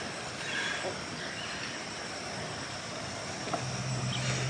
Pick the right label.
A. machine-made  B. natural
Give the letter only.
B